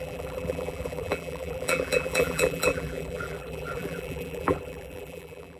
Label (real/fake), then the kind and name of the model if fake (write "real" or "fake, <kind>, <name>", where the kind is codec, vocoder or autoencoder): fake, vocoder, BigVGAN v2